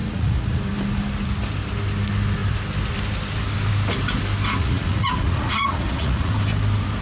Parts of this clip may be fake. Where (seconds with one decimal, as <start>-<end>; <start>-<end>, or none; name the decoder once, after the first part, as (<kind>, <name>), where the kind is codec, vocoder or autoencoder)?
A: 0.0-0.6 (vocoder, Vocos); 4.6-6.3